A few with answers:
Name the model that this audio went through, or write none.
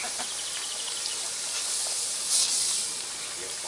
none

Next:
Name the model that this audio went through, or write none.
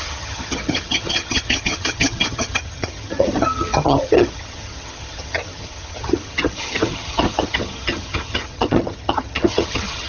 vocoder, HiFi-GAN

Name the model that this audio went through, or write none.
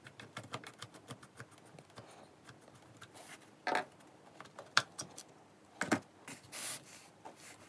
none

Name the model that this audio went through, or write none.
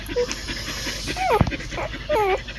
none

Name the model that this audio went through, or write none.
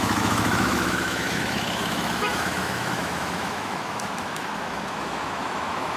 autoencoder, DAC-VAE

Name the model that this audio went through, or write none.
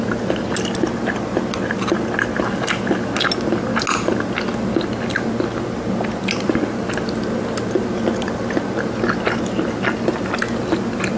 none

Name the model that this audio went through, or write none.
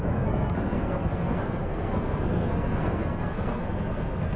codec, SNAC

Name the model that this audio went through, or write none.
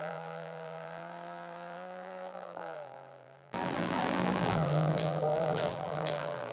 vocoder, BigVGAN v2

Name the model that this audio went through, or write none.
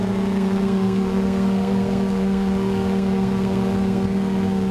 codec, SNAC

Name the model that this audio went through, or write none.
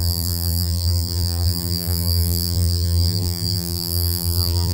vocoder, BigVGAN v2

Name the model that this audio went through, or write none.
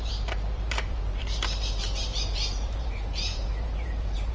vocoder, BigVGAN v2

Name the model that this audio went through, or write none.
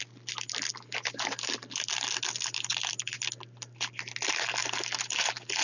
none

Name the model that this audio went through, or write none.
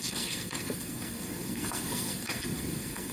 codec, SNAC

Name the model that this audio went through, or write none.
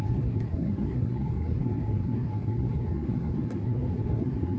codec, SNAC